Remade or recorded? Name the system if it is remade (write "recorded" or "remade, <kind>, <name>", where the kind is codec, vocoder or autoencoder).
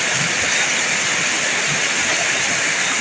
recorded